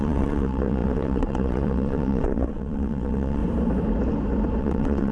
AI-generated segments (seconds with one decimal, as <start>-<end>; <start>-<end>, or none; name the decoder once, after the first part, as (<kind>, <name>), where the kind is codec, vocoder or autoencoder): 0.0-3.4 (vocoder, WaveNeXt); 4.6-5.1